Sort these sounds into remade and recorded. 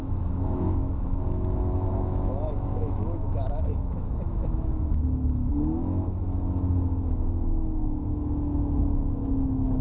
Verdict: remade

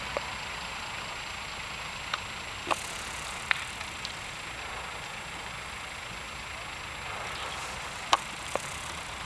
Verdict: recorded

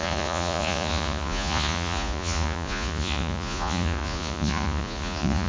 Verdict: remade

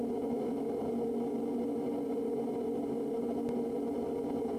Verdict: recorded